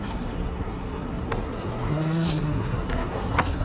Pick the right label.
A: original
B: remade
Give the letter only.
B